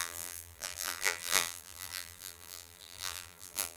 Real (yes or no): no